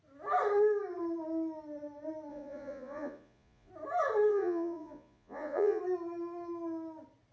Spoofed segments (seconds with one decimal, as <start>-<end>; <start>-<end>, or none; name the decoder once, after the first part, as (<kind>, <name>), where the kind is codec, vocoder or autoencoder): 2.3-3.7 (vocoder, Vocos); 4.3-5.8